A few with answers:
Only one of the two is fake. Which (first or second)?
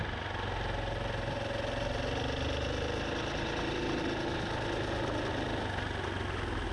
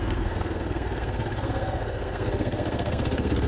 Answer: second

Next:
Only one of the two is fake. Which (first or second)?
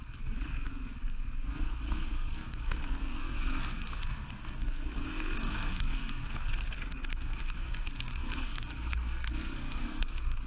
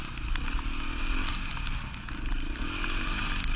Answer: first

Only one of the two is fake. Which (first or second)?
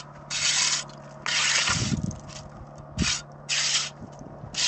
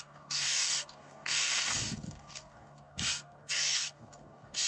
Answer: second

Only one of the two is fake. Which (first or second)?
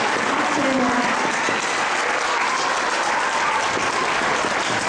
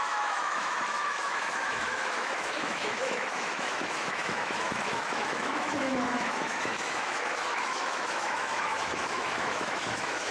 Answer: second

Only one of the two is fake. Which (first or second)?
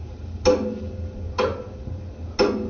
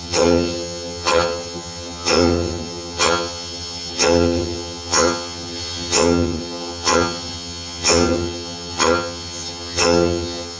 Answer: second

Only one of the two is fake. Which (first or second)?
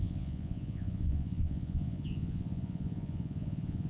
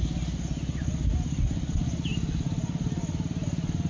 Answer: first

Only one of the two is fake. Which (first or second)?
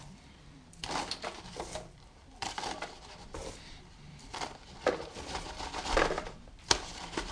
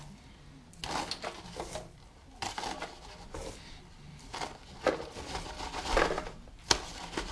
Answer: first